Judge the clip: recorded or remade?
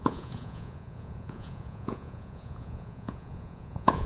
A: remade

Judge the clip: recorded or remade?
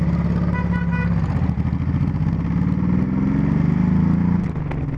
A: recorded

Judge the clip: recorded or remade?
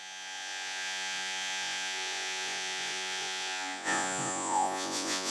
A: remade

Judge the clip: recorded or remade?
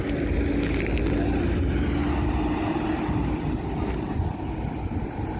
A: recorded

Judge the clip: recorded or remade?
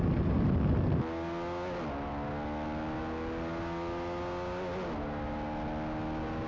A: recorded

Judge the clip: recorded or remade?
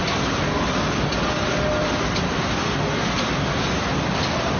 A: recorded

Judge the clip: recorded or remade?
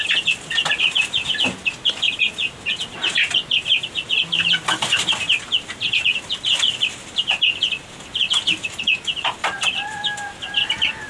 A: recorded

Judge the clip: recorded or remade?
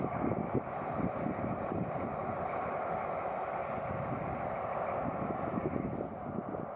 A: recorded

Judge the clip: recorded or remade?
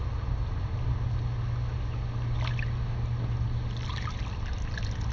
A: recorded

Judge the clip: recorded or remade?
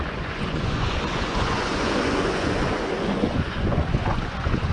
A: remade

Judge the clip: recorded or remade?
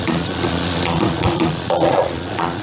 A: remade